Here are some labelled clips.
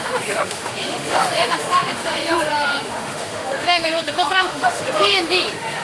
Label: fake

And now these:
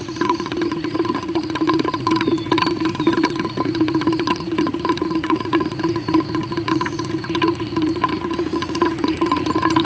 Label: fake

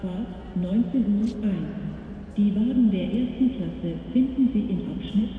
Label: real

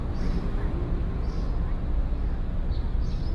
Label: real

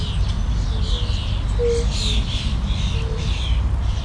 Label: real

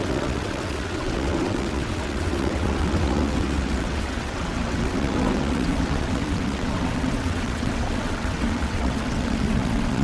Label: fake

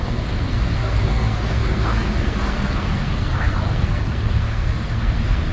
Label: fake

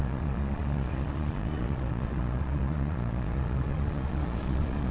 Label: fake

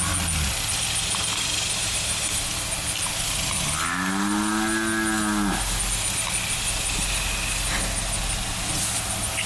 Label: real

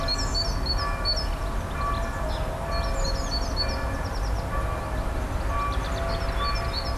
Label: real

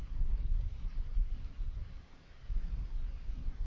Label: fake